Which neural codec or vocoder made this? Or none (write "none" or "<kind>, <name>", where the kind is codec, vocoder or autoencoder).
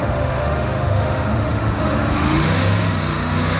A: autoencoder, DAC-VAE